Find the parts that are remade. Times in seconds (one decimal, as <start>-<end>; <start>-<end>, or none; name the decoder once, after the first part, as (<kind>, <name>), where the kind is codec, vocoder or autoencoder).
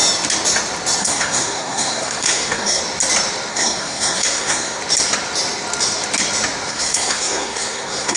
1.0-2.8 (codec, SNAC); 3.5-4.8; 6.7-8.2